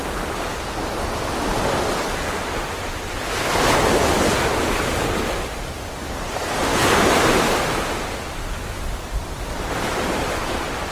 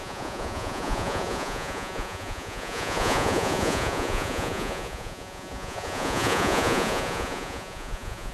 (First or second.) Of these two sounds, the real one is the first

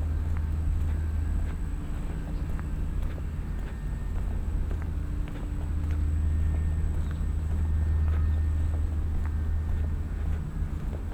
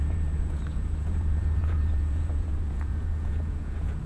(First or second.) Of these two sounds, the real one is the first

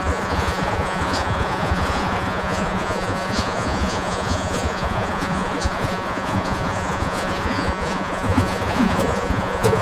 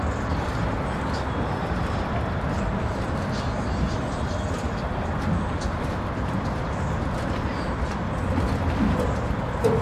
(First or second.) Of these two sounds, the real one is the second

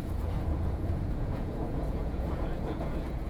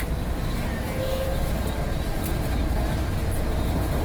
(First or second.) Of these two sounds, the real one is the second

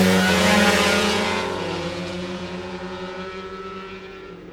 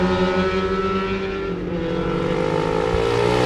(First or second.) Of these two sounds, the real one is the second